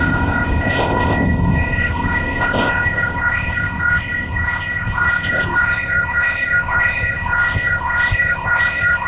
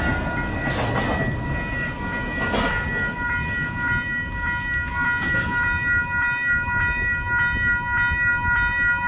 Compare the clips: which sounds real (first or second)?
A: second